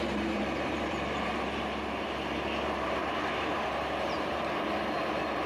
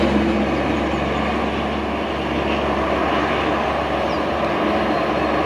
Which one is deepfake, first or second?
first